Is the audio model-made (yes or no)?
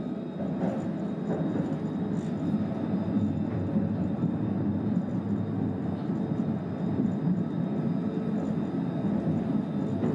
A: no